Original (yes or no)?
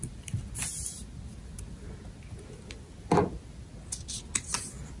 yes